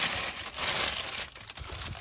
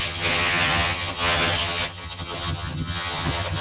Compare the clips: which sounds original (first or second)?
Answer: first